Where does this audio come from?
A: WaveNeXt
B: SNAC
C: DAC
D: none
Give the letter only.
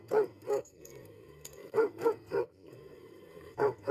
B